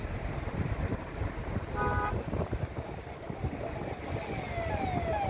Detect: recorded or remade recorded